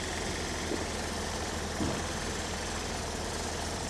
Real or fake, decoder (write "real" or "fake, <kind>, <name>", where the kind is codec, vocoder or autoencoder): real